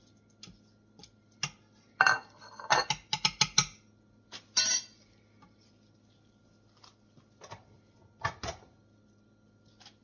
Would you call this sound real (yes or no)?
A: yes